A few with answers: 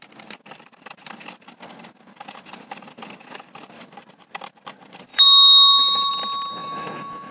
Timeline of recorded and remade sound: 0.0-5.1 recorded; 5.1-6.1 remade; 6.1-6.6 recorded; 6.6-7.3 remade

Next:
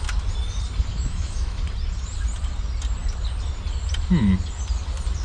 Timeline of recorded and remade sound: 0.0-0.9 recorded; 0.9-1.6 remade; 1.6-5.2 recorded

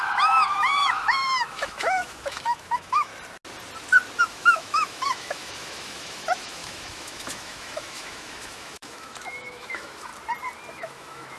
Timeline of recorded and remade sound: 0.0-3.1 remade; 3.1-4.2 recorded; 4.2-10.1 remade; 10.1-10.7 recorded; 10.7-11.4 remade

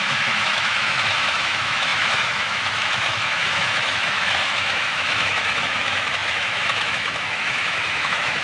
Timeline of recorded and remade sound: 0.0-8.4 remade

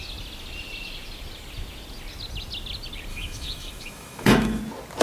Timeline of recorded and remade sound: 0.0-3.1 recorded; 3.1-4.6 remade; 4.6-5.0 recorded

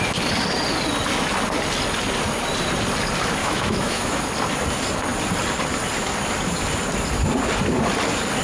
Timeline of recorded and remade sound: 0.0-3.4 recorded; 3.4-4.2 remade; 4.2-8.4 recorded